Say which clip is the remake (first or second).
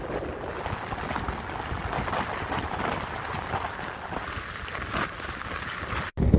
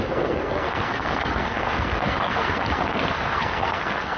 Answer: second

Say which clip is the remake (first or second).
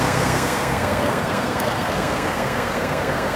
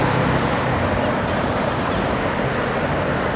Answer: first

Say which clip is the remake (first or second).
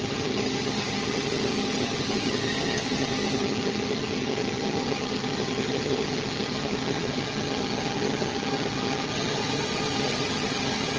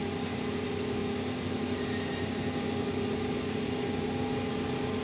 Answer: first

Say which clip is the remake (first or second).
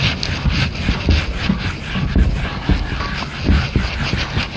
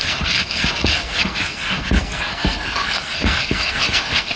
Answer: second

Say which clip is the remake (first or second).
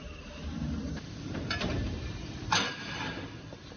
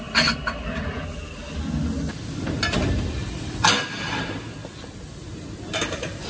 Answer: first